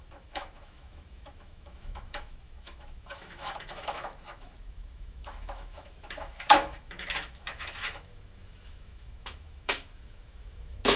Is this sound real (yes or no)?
no